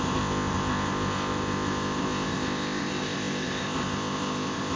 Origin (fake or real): fake